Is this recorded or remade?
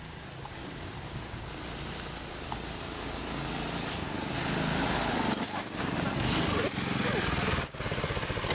recorded